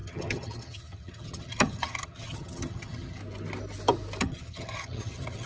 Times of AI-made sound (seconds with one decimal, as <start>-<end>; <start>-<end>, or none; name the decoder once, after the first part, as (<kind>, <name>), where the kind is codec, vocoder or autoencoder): 0.0-3.2 (vocoder, HiFi-GAN); 4.2-5.5